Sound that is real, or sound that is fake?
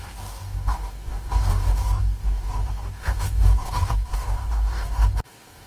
fake